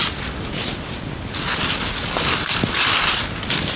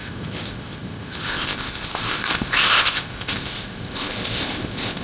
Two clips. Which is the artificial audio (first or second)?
second